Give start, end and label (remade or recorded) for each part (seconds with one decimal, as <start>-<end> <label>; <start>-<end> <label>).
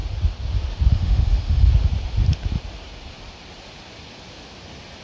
0.0-0.9 recorded; 0.9-1.7 remade; 1.7-5.0 recorded